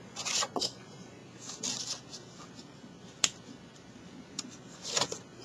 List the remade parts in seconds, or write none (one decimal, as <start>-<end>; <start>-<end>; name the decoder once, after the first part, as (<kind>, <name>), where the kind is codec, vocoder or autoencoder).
0.0-1.2 (vocoder, Vocos); 4.0-5.4